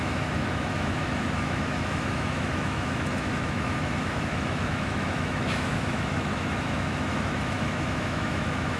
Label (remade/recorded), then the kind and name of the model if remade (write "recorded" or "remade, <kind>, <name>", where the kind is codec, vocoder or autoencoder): remade, autoencoder, DAC-VAE